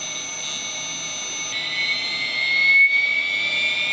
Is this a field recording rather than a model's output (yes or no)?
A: yes